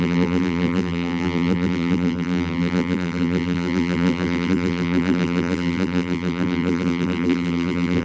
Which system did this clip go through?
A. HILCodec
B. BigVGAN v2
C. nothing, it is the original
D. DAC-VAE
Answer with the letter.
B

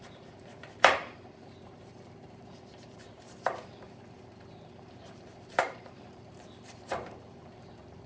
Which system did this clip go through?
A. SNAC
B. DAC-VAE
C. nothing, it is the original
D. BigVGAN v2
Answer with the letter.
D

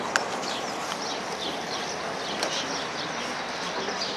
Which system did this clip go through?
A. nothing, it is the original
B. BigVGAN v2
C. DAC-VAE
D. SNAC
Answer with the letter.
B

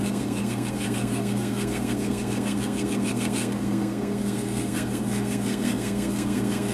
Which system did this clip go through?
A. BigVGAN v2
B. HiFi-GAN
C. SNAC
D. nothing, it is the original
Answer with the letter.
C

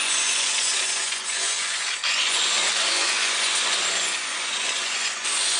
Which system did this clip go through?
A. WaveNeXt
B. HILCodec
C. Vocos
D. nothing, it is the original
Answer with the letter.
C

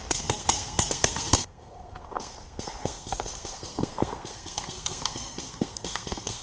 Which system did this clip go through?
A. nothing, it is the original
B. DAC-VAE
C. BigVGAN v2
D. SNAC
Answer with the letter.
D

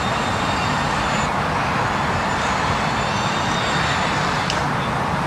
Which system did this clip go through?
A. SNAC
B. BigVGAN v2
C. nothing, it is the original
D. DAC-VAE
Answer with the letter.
C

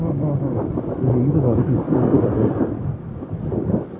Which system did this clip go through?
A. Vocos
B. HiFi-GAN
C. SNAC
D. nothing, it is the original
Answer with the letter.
D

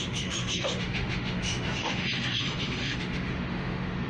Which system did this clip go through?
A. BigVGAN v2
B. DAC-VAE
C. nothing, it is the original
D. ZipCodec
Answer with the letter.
B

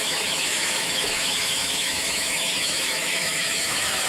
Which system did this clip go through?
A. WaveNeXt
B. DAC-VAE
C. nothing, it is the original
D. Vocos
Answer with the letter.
B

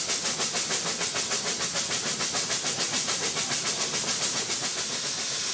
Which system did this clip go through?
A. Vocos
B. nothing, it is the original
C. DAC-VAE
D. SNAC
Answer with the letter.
B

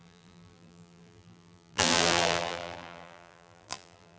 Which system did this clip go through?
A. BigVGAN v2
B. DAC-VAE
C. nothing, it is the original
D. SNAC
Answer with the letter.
A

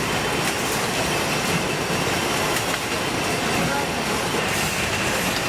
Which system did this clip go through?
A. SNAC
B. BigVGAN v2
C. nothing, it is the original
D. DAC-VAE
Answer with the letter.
C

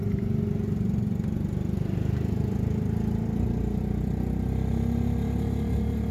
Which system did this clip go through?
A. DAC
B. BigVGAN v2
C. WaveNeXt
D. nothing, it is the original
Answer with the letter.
D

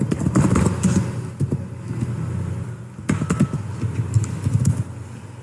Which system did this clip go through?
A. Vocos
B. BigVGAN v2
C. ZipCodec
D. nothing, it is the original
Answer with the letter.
D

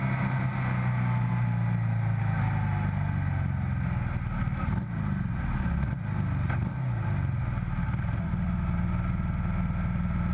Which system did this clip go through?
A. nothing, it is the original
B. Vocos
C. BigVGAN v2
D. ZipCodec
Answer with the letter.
A